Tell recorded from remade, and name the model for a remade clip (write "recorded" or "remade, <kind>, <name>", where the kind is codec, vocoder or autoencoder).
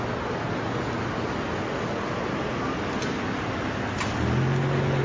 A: recorded